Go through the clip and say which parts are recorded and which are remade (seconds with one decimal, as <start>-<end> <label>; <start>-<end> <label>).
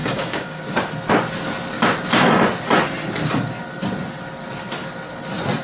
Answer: 0.0-0.6 remade; 0.6-5.6 recorded